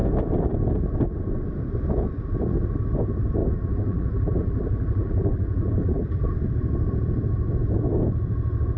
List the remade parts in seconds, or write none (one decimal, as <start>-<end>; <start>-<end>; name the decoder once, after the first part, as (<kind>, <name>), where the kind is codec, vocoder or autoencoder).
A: 3.4-6.2 (vocoder, BigVGAN v2)